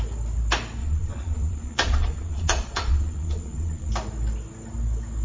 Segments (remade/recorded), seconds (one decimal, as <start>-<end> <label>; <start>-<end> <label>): 0.0-0.8 recorded; 0.8-3.9 remade; 3.9-5.2 recorded